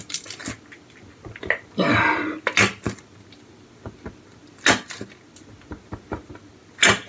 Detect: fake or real real